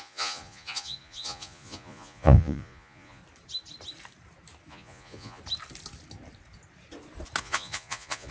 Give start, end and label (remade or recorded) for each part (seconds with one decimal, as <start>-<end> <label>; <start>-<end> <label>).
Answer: 0.0-3.2 remade; 3.2-4.7 recorded; 4.7-5.4 remade; 5.4-7.4 recorded; 7.4-8.3 remade